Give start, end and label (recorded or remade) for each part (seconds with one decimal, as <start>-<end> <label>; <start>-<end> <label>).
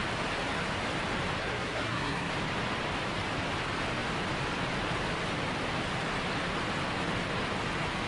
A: 0.0-1.4 recorded; 1.4-2.3 remade; 2.3-8.1 recorded